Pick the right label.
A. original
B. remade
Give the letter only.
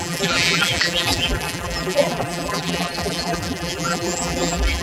B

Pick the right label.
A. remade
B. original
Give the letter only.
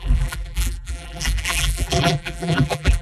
A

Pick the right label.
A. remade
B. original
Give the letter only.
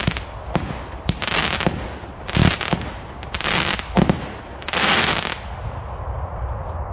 B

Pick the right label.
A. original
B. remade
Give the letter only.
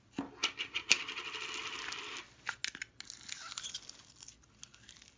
A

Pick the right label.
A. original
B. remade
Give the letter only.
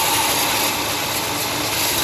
B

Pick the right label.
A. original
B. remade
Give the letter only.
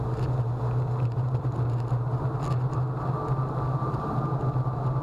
A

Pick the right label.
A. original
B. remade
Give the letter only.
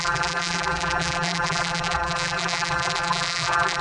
B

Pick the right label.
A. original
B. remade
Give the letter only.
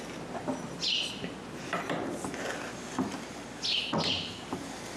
A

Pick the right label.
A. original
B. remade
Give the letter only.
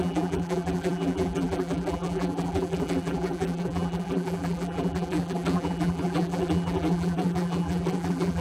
B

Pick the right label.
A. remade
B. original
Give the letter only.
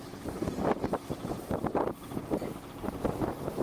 B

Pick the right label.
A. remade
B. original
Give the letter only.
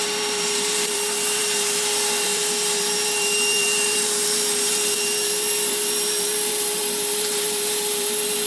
A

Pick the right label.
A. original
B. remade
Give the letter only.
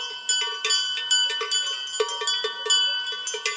A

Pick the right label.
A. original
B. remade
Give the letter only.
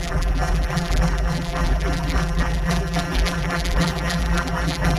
B